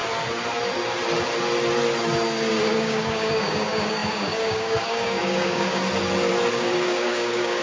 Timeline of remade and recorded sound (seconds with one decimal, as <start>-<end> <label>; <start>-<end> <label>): 0.0-2.5 recorded; 2.5-5.8 remade; 5.8-6.5 recorded; 6.5-7.6 remade

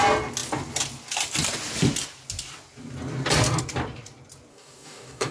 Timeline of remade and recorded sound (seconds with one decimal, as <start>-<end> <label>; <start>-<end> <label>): 0.0-4.5 recorded; 4.5-5.3 remade

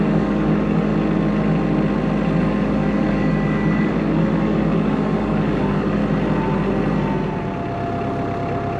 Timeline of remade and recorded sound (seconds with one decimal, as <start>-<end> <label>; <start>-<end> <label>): 0.0-0.9 remade; 0.9-2.4 recorded; 2.4-6.0 remade; 6.0-8.8 recorded